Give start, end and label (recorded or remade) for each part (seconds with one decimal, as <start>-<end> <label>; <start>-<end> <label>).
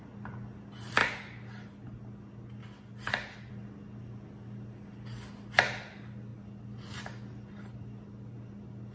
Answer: 0.0-8.9 recorded